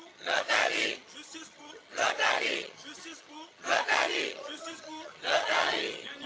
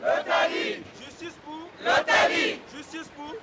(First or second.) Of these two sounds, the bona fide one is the second